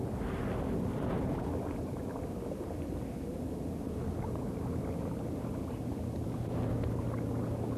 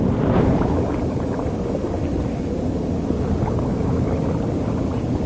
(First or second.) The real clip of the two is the first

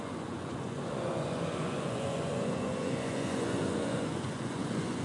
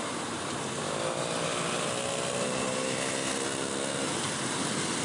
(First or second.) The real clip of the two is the second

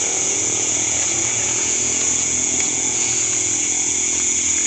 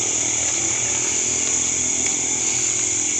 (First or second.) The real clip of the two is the second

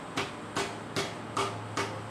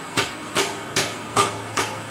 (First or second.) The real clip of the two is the first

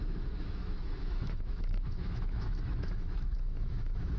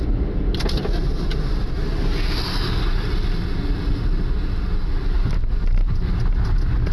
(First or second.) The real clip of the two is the second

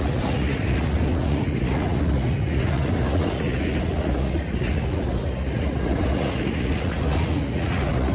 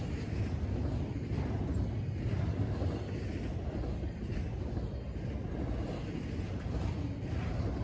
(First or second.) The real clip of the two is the second